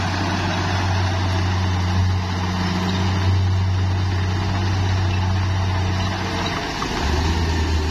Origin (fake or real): real